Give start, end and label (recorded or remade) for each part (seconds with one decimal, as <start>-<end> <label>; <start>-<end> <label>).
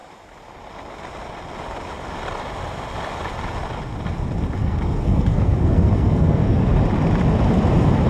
0.0-4.6 recorded; 4.6-6.6 remade; 6.6-8.1 recorded